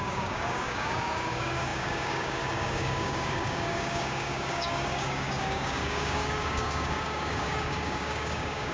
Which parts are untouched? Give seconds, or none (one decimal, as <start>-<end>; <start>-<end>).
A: none